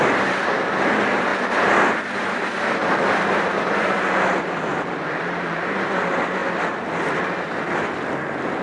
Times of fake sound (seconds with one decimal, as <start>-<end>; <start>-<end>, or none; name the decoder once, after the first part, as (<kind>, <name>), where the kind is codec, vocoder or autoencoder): 0.0-1.3 (vocoder, BigVGAN v2); 1.9-8.6